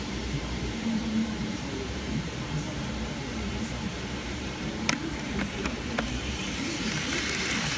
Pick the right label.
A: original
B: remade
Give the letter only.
B